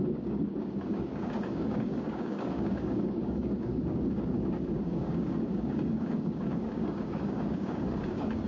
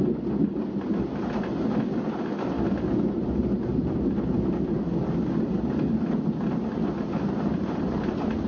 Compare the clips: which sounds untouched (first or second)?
second